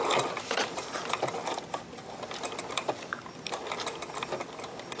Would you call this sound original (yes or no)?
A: yes